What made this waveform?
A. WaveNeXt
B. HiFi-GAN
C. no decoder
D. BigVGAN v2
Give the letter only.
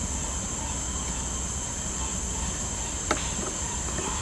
C